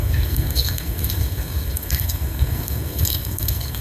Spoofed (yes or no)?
yes